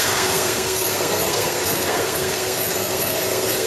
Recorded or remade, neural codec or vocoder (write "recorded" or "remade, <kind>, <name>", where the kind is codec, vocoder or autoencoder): remade, codec, SNAC